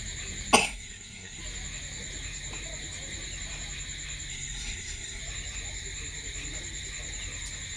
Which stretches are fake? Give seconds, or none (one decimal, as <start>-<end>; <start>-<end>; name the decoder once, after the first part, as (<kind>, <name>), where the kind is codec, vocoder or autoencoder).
0.6-1.4 (codec, SNAC); 4.3-5.2